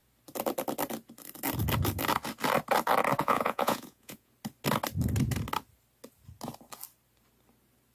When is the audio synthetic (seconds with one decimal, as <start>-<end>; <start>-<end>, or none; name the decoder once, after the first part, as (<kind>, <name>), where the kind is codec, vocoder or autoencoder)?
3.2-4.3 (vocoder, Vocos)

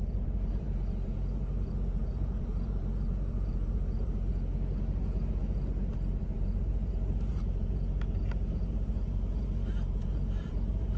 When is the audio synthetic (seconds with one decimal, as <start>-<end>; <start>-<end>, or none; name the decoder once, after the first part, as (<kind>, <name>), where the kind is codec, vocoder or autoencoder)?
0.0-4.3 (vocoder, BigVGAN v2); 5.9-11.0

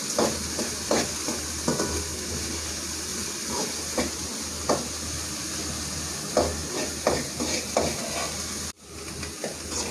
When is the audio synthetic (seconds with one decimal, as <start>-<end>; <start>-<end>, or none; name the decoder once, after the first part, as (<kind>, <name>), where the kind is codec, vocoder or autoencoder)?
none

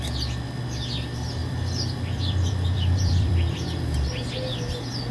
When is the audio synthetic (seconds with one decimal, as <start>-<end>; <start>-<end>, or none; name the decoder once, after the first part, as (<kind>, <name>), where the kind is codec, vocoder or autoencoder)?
1.4-3.8 (vocoder, BigVGAN v2)

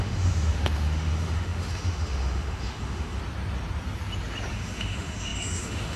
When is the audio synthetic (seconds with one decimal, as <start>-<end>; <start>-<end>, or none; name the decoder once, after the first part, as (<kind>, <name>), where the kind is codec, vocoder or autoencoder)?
0.0-3.2 (autoencoder, DAC-VAE); 4.5-6.0

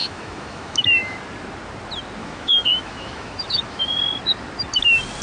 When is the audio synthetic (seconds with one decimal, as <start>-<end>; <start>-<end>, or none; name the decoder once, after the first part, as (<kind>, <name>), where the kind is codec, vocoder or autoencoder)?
0.0-1.2 (autoencoder, DAC-VAE); 2.2-4.0

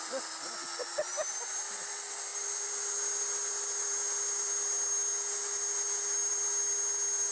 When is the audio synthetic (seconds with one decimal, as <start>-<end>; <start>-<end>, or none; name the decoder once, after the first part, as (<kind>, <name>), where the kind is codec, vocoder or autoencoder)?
none

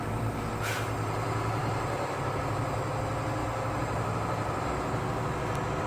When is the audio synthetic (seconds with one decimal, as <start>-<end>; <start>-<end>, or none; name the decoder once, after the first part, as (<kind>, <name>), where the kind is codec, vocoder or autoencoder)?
none